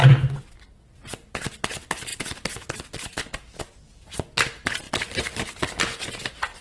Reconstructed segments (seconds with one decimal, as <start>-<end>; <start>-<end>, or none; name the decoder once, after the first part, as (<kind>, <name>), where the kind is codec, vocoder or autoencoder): none